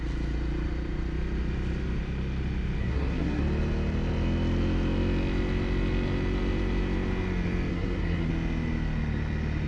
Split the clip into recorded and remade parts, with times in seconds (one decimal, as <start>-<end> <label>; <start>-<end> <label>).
0.0-2.8 recorded; 2.8-3.4 remade; 3.4-7.7 recorded; 7.7-8.3 remade; 8.3-9.7 recorded